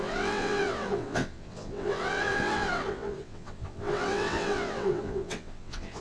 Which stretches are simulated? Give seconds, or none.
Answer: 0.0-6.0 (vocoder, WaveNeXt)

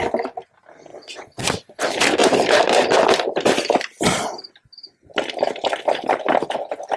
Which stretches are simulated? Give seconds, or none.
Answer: 0.9-1.8 (vocoder, WaveNeXt)

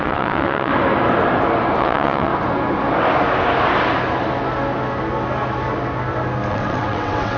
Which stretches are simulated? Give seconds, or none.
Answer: 0.0-0.7 (vocoder, WaveNeXt); 1.8-2.3; 6.5-7.4

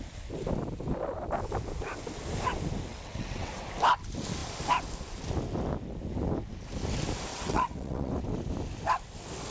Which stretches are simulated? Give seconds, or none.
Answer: 2.9-3.5 (vocoder, WaveNeXt); 7.3-8.1

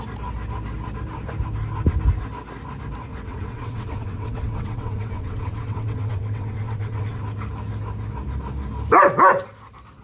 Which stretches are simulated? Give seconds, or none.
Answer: 3.1-7.2 (vocoder, WaveNeXt)